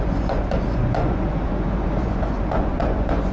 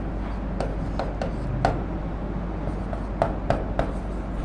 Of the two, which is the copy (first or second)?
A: first